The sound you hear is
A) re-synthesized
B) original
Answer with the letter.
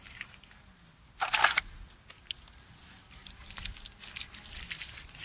B